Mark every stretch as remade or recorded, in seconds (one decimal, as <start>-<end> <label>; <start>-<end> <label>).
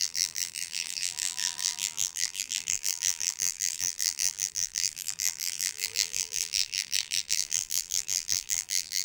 0.0-9.0 remade